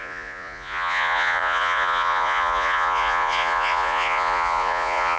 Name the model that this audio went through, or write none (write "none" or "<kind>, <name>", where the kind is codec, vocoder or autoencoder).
vocoder, Vocos